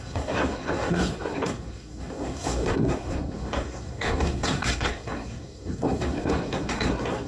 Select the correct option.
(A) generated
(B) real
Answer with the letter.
A